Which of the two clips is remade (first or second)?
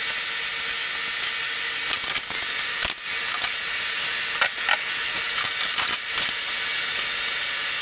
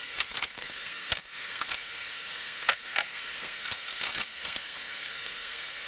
second